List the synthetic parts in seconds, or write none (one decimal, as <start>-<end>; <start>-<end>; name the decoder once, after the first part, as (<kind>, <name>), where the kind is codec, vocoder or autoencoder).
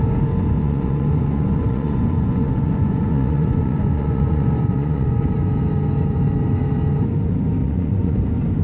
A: 0.6-5.3 (vocoder, Vocos); 7.6-8.2